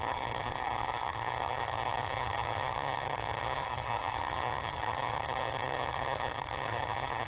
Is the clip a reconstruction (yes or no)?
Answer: yes